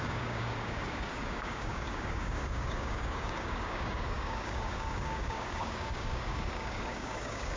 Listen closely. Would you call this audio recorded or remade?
remade